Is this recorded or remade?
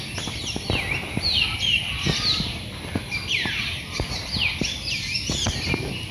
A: recorded